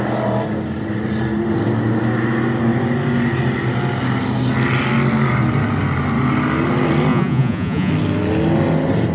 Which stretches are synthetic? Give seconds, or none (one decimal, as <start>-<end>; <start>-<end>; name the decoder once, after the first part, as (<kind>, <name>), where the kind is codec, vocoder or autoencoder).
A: 7.1-7.9 (vocoder, Vocos)